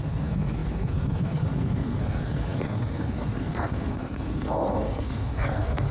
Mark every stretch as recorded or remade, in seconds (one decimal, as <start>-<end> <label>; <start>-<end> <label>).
0.0-5.9 remade